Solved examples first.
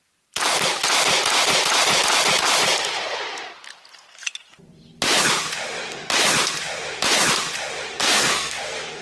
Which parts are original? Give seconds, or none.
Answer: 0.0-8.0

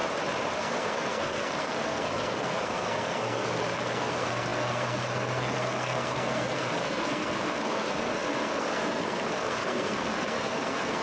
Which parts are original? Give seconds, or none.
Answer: 0.0-0.6

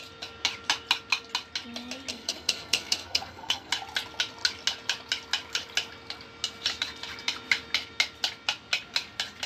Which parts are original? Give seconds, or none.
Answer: 0.0-2.1; 3.7-9.5

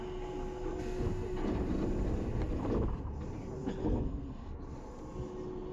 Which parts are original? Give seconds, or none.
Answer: 0.0-3.8; 4.6-5.7

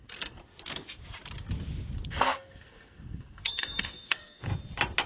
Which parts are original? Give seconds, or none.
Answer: 0.4-2.1; 4.5-5.1

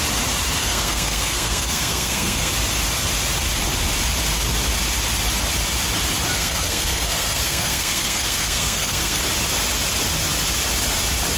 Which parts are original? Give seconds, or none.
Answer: 0.0-0.6; 2.5-6.4; 9.2-11.4

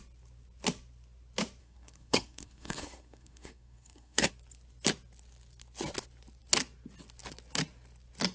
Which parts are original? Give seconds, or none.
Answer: 0.0-1.6; 4.3-8.3